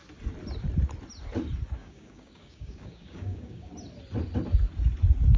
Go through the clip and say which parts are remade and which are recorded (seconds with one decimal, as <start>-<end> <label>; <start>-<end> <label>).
0.0-1.8 recorded; 1.8-3.7 remade; 3.7-5.4 recorded